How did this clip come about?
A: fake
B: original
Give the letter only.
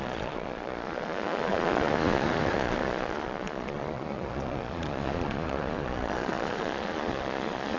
A